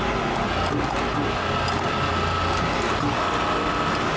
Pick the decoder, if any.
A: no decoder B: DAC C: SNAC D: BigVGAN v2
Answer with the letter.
A